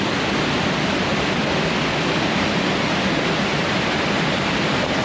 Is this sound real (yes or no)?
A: yes